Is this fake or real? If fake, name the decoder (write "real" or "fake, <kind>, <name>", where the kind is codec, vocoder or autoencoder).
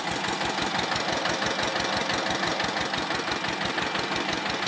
real